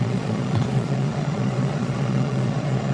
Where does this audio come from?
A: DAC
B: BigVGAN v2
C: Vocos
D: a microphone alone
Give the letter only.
C